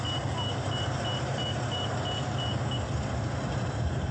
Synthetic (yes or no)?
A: no